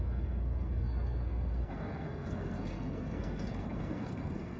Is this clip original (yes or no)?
no